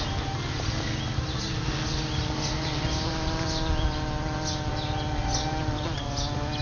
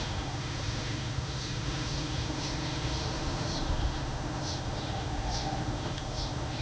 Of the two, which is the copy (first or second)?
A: second